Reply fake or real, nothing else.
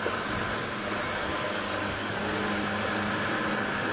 real